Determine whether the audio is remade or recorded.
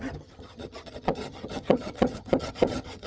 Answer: remade